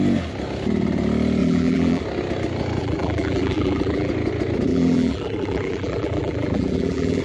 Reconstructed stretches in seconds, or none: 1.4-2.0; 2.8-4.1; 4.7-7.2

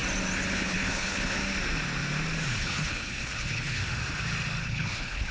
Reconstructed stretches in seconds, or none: 0.5-1.4; 2.6-3.8; 4.6-5.3

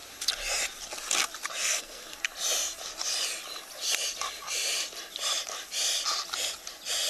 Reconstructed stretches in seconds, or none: 1.6-2.2